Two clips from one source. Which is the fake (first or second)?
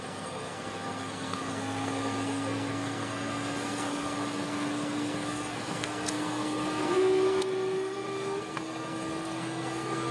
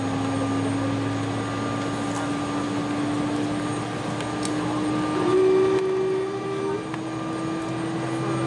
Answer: first